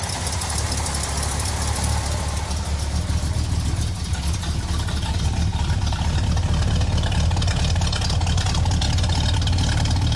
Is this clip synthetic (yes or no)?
no